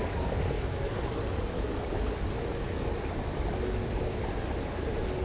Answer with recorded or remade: recorded